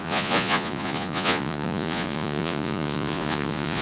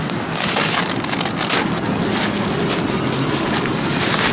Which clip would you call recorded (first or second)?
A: second